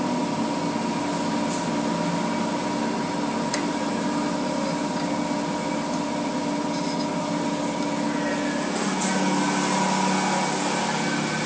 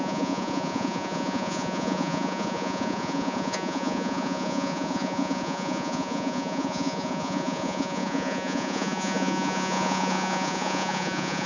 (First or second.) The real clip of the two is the first